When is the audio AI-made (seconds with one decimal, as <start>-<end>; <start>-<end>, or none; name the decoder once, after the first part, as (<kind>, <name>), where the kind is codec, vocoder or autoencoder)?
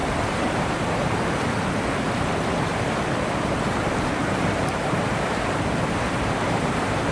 0.0-1.7 (vocoder, BigVGAN v2); 2.7-7.1